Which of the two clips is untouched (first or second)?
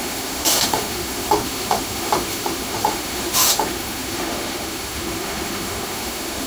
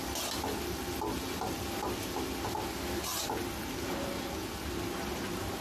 second